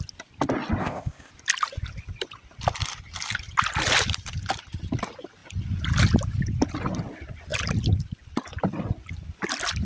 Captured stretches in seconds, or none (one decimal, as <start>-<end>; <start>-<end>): 0.0-0.8; 1.3-9.8